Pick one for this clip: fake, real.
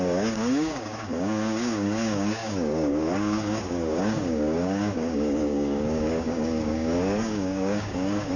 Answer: fake